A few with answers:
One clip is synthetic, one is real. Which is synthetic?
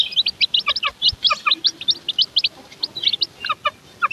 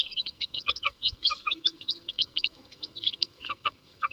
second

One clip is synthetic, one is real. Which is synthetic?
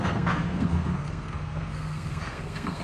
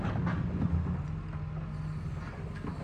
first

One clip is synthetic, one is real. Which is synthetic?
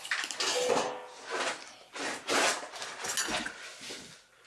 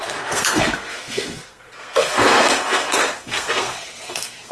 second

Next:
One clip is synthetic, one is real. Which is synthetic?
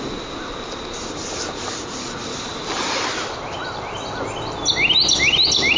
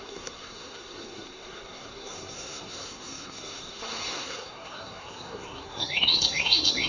second